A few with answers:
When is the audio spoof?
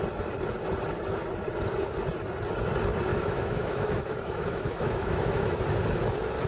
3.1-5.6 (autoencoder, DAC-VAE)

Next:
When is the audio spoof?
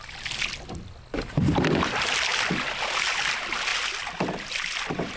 none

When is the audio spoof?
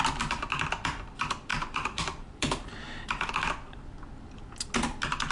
1.5-3.3 (vocoder, BigVGAN v2)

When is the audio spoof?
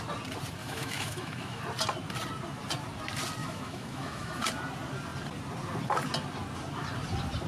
0.6-1.6 (autoencoder, DAC-VAE); 3.4-4.4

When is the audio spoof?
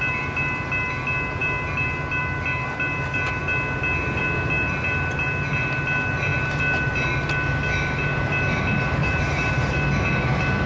9.0-9.8 (vocoder, BigVGAN v2)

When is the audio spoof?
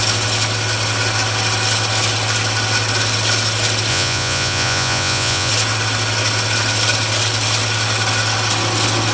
3.9-5.5 (vocoder, Vocos)